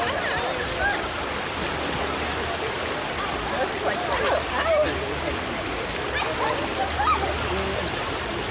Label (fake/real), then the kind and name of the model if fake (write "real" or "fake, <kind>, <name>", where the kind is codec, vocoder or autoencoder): real